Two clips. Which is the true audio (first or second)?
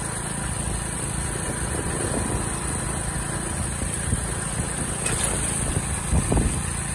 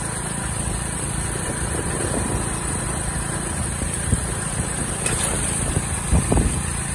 first